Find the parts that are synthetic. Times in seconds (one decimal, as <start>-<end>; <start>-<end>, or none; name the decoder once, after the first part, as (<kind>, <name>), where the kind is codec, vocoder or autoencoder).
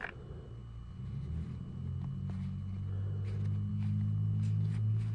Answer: none